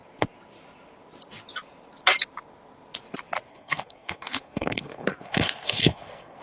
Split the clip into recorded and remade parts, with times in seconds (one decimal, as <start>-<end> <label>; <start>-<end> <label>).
0.0-3.5 recorded; 3.5-6.4 remade